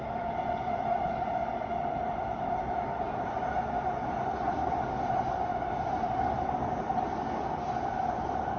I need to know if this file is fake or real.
real